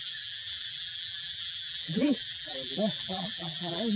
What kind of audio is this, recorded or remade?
remade